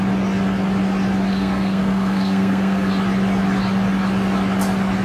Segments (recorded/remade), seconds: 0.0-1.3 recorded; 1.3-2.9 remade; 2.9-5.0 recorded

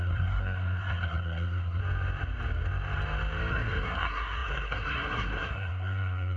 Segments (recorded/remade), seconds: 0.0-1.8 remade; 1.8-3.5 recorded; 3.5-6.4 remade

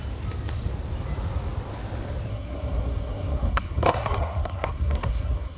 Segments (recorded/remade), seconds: 0.0-2.3 recorded; 2.3-5.6 remade